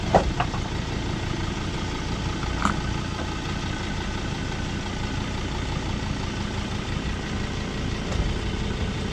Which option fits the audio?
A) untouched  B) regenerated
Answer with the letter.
A